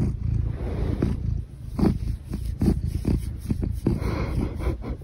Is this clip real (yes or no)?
yes